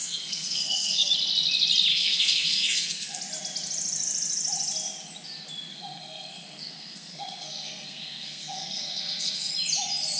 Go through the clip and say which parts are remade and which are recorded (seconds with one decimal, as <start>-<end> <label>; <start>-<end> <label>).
0.0-1.1 remade; 1.1-1.9 recorded; 1.9-3.2 remade; 3.2-5.7 recorded; 5.7-9.5 remade; 9.5-10.2 recorded